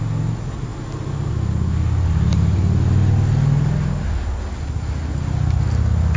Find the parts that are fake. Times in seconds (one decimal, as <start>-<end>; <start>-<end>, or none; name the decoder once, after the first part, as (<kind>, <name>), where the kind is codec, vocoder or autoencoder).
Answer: none